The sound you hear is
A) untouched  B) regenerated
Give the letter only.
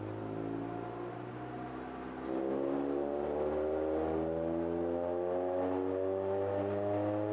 A